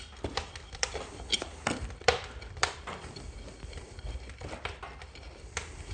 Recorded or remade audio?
remade